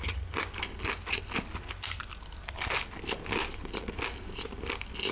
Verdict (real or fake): real